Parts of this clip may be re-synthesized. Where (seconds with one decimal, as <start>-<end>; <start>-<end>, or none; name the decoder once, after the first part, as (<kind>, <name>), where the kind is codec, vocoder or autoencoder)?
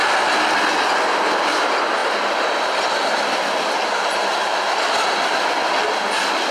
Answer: none